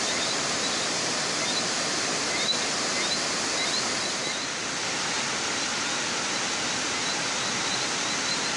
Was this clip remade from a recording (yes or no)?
no